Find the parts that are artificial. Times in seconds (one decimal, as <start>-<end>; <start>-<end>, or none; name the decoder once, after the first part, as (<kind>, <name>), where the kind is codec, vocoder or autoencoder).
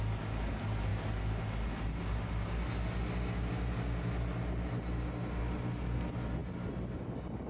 none